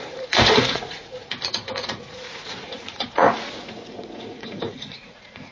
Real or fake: fake